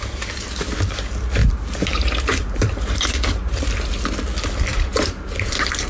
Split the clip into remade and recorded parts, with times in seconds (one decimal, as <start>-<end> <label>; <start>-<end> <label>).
0.0-1.4 recorded; 1.4-3.7 remade; 3.7-4.7 recorded; 4.7-5.5 remade; 5.5-5.9 recorded